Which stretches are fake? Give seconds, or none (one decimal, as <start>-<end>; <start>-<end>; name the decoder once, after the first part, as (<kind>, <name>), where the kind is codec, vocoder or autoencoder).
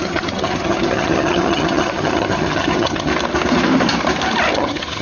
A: 0.0-3.1 (vocoder, HiFi-GAN); 4.5-5.0